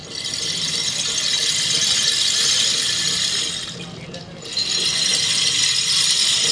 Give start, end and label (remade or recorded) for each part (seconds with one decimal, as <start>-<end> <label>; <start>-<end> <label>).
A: 0.0-1.1 remade; 1.1-4.6 recorded; 4.6-5.6 remade; 5.6-6.5 recorded